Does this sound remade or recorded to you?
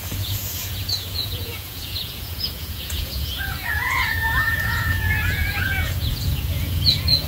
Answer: remade